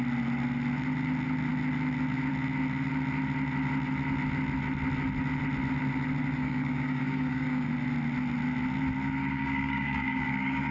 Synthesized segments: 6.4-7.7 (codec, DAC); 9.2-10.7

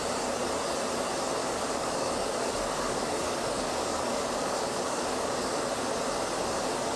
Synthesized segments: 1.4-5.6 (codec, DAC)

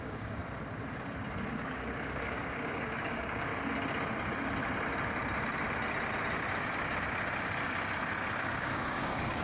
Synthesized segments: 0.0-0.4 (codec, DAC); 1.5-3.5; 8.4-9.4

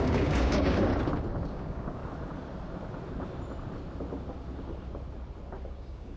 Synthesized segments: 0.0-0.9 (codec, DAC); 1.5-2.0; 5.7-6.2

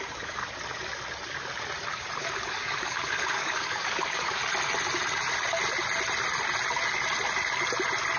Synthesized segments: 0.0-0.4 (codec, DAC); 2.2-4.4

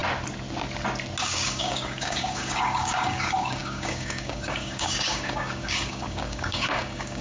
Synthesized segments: 1.2-7.2 (codec, DAC)

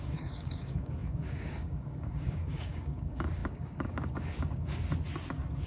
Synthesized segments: 0.0-4.8 (codec, DAC)